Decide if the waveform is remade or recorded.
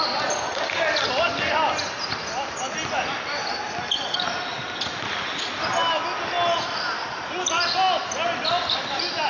recorded